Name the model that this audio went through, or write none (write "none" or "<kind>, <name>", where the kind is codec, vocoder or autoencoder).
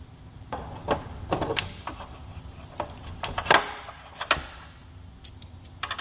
vocoder, BigVGAN v2